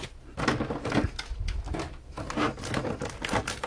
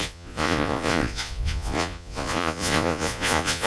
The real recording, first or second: first